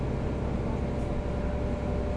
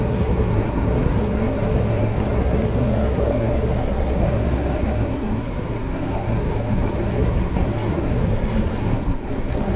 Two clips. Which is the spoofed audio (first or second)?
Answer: second